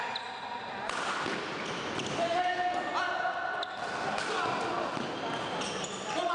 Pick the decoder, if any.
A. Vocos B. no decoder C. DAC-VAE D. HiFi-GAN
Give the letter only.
B